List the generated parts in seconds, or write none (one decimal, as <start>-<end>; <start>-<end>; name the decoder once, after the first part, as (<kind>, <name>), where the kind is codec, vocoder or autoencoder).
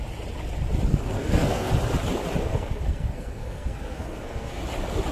0.9-1.7 (codec, SNAC); 2.4-4.6